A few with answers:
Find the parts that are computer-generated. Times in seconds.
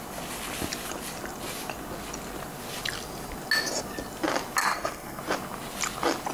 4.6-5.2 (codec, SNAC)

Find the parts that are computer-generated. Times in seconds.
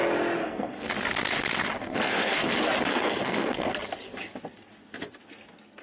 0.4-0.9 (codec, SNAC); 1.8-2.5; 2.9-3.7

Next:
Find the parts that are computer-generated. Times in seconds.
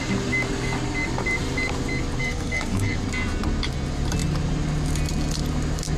2.2-3.0 (codec, SNAC)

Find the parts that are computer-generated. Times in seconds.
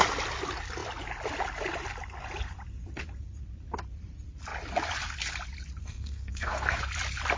5.8-6.8 (codec, SNAC)